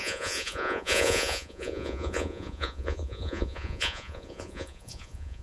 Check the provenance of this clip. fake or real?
fake